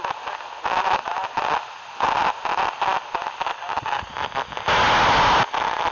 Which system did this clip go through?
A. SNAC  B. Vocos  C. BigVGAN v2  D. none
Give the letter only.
D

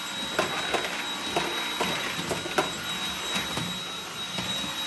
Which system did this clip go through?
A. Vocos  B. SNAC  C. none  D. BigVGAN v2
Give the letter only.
C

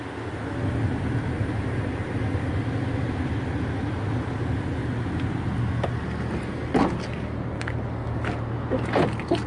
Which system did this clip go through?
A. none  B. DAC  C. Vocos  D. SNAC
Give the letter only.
A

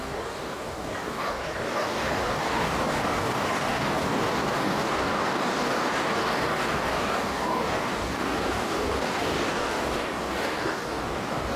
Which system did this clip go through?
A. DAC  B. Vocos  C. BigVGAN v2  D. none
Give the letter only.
A